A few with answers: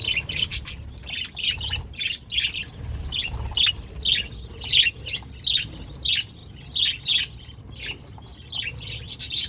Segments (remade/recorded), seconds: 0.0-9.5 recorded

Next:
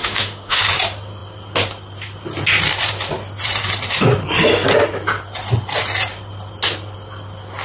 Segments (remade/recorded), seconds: 0.0-0.6 remade; 0.6-7.6 recorded

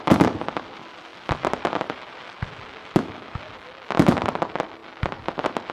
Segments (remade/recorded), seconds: 0.0-2.8 recorded; 2.8-3.4 remade; 3.4-5.7 recorded